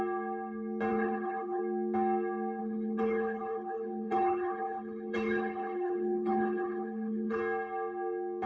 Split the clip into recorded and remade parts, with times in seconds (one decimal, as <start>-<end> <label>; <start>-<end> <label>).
0.0-0.9 recorded; 0.9-1.6 remade; 1.6-2.6 recorded; 2.6-7.4 remade; 7.4-8.5 recorded